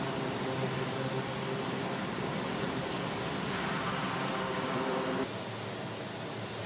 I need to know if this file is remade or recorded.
recorded